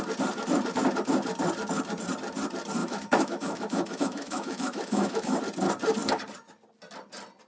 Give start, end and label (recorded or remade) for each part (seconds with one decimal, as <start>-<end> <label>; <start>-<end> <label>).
0.0-2.8 recorded; 2.8-5.4 remade; 5.4-7.5 recorded